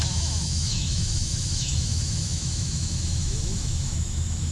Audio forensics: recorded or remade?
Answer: remade